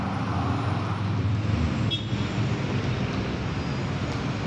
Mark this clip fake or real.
real